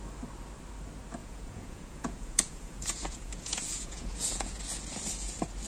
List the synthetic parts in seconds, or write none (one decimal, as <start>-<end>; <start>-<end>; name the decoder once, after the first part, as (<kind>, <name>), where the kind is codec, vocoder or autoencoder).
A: 1.2-4.6 (vocoder, Vocos)